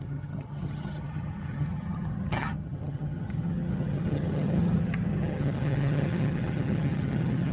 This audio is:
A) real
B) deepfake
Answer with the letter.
B